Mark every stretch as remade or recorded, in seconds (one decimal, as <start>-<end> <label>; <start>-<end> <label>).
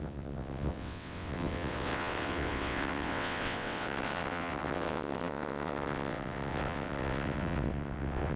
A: 0.0-8.4 remade